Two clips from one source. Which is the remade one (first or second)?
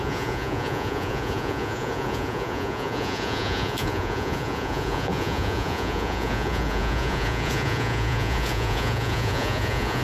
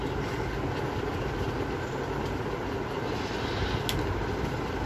first